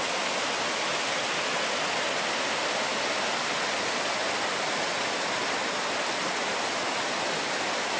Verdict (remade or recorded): recorded